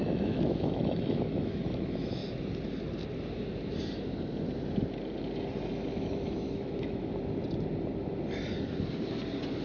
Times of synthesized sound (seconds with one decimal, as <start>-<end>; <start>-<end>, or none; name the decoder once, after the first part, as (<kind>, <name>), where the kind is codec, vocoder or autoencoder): 0.0-2.2 (autoencoder, DAC-VAE); 5.9-7.1